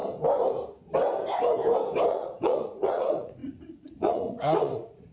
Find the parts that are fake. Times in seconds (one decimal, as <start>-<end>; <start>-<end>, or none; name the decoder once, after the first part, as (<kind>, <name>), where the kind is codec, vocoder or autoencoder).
2.1-5.1 (vocoder, Vocos)